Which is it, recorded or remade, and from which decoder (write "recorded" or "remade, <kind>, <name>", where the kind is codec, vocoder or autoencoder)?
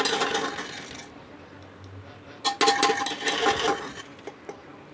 recorded